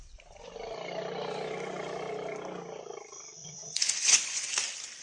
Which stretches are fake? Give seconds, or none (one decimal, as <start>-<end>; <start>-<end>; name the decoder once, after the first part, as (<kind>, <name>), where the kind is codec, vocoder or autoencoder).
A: 3.4-4.4 (vocoder, Vocos)